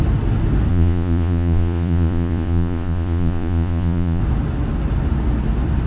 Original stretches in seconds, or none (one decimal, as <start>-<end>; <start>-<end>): 0.0-0.7; 4.2-5.9